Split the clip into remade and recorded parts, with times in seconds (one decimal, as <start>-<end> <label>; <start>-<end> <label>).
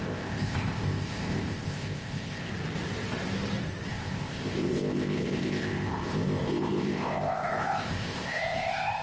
0.0-2.5 remade; 2.5-3.9 recorded; 3.9-9.0 remade